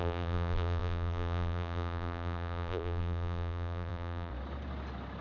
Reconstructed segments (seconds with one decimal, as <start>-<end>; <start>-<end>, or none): 0.0-4.3